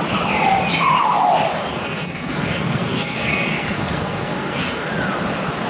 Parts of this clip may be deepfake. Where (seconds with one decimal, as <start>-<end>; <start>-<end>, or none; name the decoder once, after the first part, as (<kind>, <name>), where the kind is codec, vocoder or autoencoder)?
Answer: 1.7-4.9 (codec, SNAC)